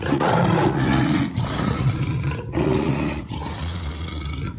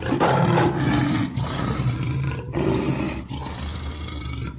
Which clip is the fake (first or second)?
first